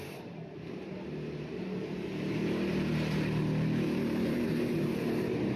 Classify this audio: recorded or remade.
remade